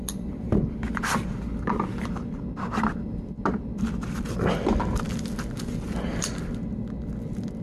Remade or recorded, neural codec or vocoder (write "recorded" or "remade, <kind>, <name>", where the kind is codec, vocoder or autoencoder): recorded